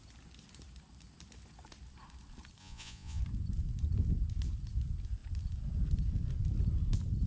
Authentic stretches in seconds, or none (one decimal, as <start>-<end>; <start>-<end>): 0.0-2.6; 3.2-7.3